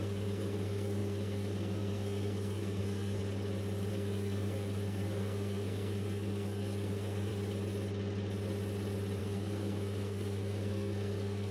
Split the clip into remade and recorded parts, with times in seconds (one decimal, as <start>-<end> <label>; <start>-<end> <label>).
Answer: 0.0-3.2 remade; 3.2-3.9 recorded; 3.9-7.3 remade; 7.3-9.2 recorded; 9.2-11.5 remade